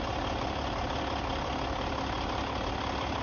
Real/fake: real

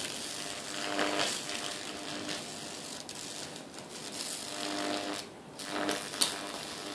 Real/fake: real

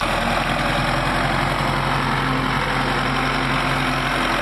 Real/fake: real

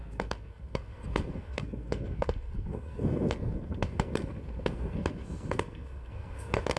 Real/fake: fake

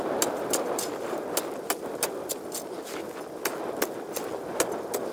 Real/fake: real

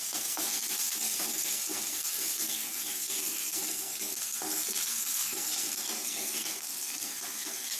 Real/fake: fake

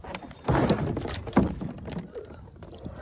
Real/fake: real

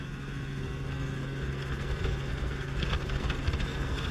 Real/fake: fake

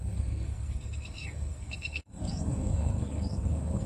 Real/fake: fake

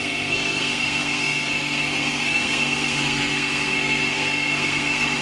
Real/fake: fake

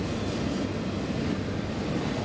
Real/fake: real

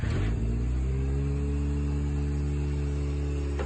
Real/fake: real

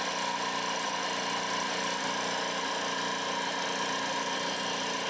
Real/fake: real